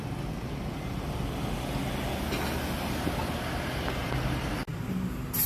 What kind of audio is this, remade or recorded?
recorded